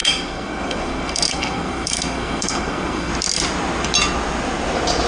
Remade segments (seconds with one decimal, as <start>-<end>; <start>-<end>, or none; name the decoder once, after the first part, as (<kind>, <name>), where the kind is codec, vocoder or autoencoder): 0.0-3.1 (codec, SNAC)